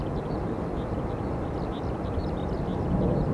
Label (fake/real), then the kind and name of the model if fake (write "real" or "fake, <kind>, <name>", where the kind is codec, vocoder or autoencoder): real